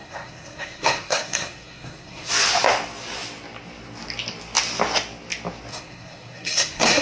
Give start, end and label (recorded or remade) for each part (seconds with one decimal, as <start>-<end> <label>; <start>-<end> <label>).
0.0-2.3 remade; 2.3-5.7 recorded; 5.7-7.0 remade